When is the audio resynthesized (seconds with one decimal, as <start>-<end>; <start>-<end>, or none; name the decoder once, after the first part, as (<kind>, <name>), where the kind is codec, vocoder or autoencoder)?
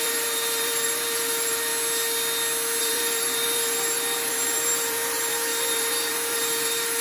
0.0-1.7 (vocoder, BigVGAN v2); 2.8-7.0